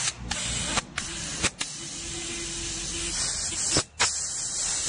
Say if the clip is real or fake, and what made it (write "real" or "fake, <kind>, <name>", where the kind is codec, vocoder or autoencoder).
real